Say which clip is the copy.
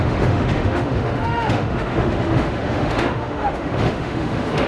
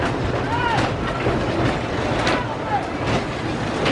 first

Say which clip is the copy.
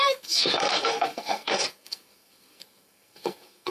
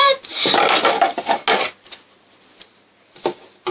first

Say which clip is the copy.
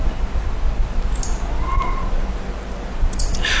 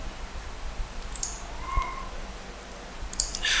first